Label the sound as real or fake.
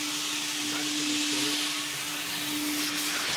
real